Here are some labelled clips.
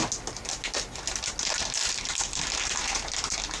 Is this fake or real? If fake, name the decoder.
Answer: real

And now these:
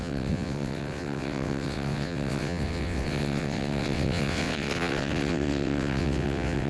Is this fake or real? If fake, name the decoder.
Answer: fake, vocoder, WaveNeXt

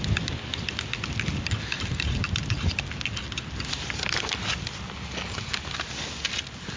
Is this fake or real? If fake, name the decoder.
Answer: real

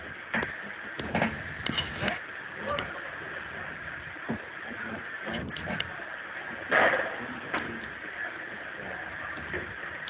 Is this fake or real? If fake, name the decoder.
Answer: real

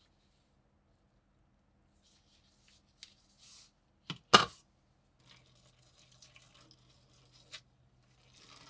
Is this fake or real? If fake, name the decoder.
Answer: real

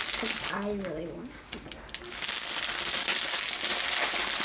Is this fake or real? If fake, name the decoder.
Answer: real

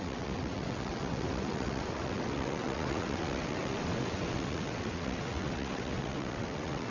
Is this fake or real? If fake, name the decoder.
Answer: fake, vocoder, WaveNeXt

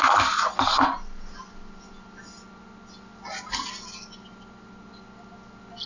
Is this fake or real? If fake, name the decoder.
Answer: real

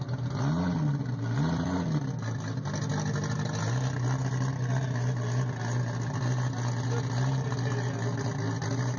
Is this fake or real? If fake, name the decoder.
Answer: real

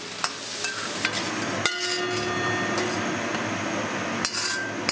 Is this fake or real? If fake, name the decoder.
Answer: real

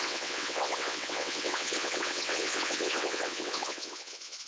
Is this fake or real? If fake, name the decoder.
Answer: fake, vocoder, WaveNeXt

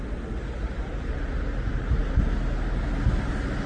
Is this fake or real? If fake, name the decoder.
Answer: real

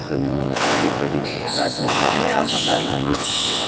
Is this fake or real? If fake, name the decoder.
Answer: fake, vocoder, WaveNeXt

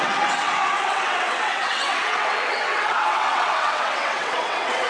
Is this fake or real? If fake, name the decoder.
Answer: fake, vocoder, WaveNeXt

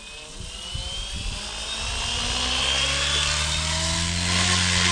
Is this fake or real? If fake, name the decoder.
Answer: real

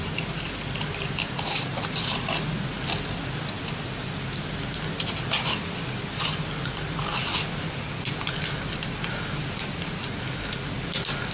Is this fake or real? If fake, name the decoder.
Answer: real